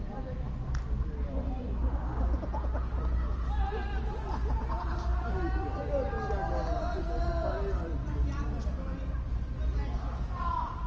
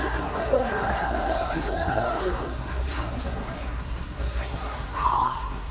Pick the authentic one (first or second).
first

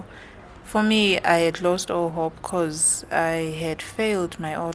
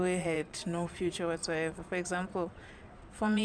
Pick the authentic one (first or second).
first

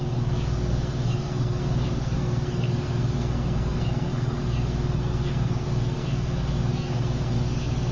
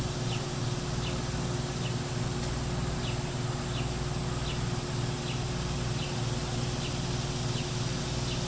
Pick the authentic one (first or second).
second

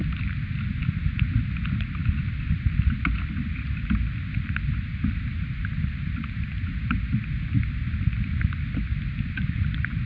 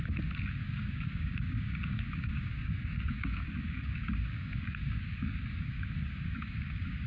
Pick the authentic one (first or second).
first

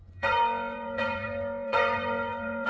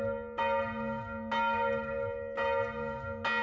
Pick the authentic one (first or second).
second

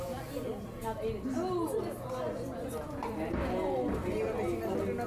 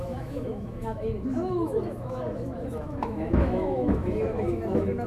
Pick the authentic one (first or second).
first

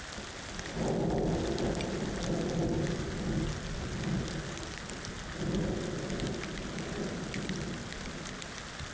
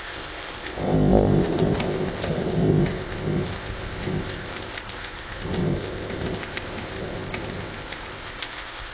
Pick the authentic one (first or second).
first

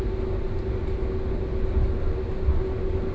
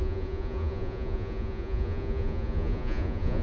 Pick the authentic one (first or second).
first